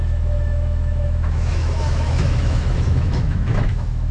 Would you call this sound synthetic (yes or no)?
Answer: yes